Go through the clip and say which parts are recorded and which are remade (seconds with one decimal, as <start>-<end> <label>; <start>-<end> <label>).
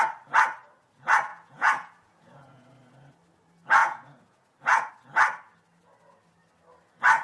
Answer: 0.0-1.3 recorded; 1.3-2.7 remade; 2.7-3.8 recorded; 3.8-4.9 remade; 4.9-7.2 recorded